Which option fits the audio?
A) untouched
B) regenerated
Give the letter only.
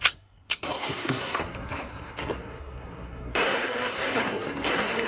B